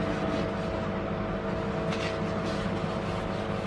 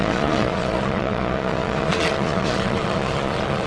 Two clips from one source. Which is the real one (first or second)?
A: first